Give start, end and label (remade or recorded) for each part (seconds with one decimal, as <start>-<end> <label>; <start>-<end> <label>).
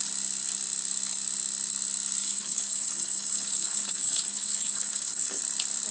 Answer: 0.0-2.2 recorded; 2.2-5.4 remade; 5.4-5.9 recorded